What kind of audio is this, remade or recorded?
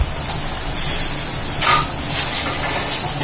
recorded